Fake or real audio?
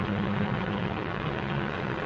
fake